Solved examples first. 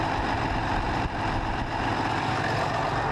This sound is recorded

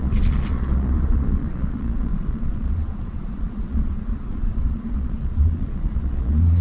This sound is remade